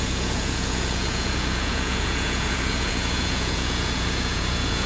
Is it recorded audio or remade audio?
remade